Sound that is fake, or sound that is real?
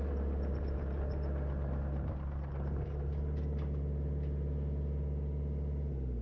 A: real